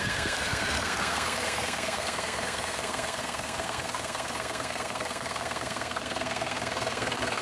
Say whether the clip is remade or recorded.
remade